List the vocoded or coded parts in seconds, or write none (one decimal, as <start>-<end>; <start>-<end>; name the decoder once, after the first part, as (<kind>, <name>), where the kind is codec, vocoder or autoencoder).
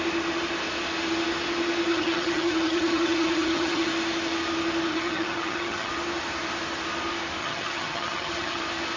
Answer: 1.9-3.9 (vocoder, HiFi-GAN); 4.9-5.9; 7.4-8.6